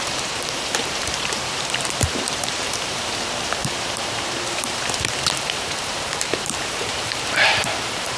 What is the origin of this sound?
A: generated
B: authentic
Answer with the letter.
A